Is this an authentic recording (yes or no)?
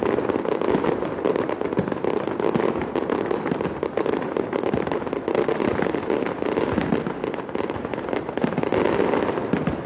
yes